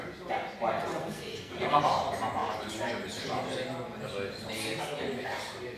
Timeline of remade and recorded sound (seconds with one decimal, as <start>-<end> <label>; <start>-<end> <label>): 0.0-0.9 recorded; 0.9-1.8 remade; 1.8-5.8 recorded

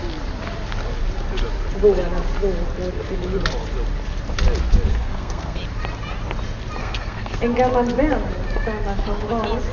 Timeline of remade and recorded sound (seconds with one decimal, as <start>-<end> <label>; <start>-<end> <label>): 0.0-4.9 recorded; 4.9-5.6 remade; 5.6-6.8 recorded; 6.8-7.4 remade; 7.4-9.7 recorded

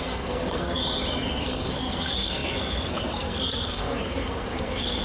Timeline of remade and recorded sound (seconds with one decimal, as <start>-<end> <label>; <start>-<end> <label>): 0.0-0.8 remade; 0.8-1.4 recorded; 1.4-5.0 remade

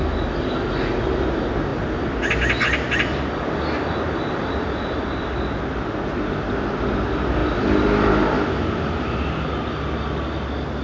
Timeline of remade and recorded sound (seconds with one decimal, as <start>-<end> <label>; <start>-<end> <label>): 0.0-10.8 recorded

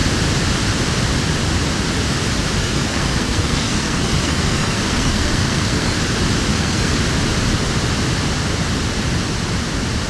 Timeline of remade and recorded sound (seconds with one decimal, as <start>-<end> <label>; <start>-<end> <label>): 0.0-2.6 recorded; 2.6-6.0 remade; 6.0-6.5 recorded; 6.5-7.0 remade; 7.0-10.1 recorded